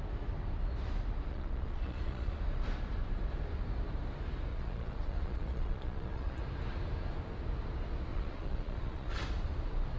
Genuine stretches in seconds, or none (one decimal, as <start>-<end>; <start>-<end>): 0.0-1.3; 2.3-4.5; 6.4-8.1; 9.2-10.0